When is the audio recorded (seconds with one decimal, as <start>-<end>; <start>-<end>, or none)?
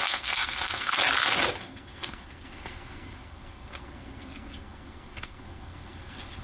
1.0-1.6